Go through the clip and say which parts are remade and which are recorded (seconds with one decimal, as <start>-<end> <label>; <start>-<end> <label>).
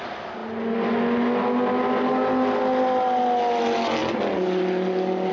0.0-5.3 recorded